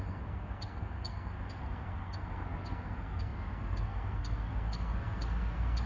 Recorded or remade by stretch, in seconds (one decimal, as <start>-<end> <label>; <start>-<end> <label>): 0.0-5.9 remade